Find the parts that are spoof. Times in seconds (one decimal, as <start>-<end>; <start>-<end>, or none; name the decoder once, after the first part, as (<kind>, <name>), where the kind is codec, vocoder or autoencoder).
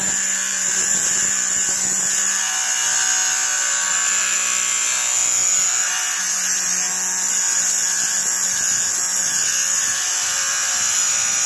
0.5-1.2 (vocoder, BigVGAN v2)